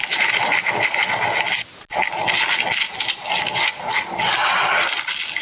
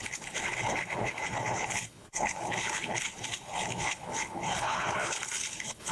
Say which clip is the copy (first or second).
second